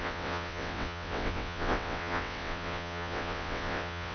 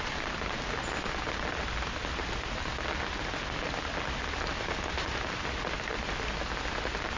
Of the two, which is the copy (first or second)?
first